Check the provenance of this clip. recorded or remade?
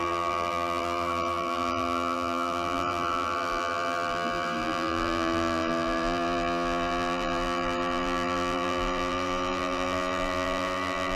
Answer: remade